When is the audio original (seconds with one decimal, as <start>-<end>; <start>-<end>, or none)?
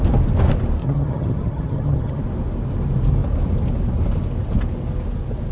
0.0-0.8; 2.2-5.5